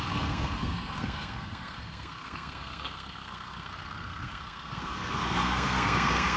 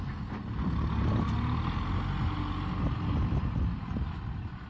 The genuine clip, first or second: second